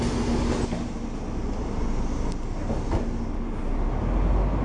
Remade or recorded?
recorded